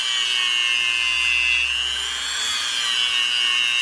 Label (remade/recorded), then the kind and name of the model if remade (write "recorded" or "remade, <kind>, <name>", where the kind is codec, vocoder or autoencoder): recorded